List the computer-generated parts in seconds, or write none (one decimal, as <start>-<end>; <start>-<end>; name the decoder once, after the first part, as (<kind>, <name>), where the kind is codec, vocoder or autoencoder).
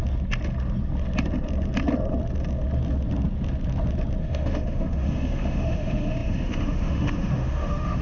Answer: 4.2-8.0 (autoencoder, DAC-VAE)